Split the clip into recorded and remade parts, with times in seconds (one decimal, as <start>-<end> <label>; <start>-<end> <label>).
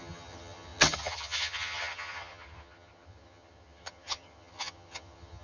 0.0-5.4 remade